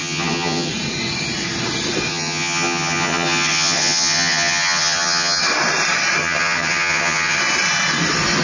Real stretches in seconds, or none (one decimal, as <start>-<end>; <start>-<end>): 0.7-2.1; 5.4-6.2; 7.4-8.4